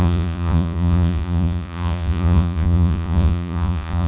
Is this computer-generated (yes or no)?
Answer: yes